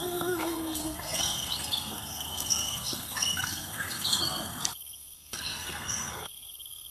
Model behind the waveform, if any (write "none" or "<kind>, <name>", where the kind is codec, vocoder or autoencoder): codec, SNAC